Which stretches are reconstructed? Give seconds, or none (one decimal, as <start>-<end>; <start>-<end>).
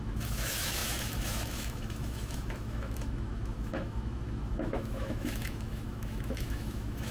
0.0-7.1